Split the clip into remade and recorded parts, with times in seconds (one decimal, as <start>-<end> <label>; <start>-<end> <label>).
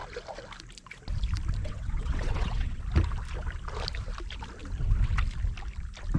0.0-1.6 recorded; 1.6-2.8 remade; 2.8-6.2 recorded